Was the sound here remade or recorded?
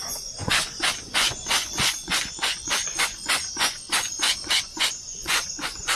remade